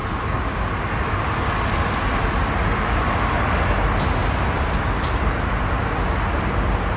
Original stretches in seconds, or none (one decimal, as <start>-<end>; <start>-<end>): 0.0-7.0